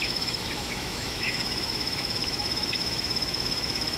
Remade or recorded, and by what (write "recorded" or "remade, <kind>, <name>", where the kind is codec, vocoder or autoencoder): remade, autoencoder, DAC-VAE